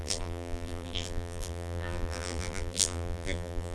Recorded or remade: remade